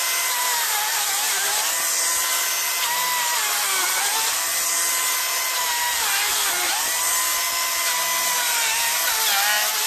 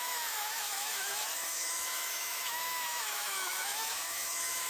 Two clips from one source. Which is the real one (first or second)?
first